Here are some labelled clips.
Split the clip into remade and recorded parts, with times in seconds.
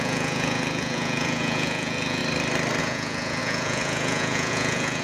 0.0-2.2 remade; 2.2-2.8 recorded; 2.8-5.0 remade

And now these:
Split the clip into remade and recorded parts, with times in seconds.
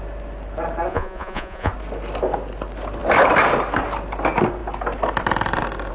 0.0-0.9 recorded; 0.9-1.7 remade; 1.7-5.9 recorded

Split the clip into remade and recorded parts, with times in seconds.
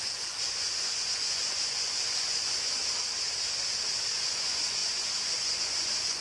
0.0-2.8 remade; 2.8-4.1 recorded; 4.1-6.2 remade